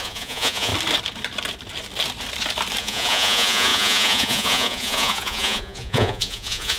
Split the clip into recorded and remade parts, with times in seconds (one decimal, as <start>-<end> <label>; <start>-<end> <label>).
0.0-0.7 remade; 0.7-2.8 recorded; 2.8-6.8 remade